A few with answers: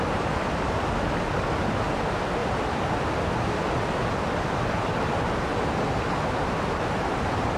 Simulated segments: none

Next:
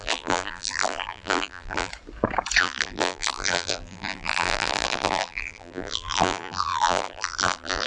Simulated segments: 0.0-1.9 (vocoder, BigVGAN v2); 2.6-7.9